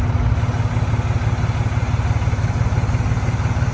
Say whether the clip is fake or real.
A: real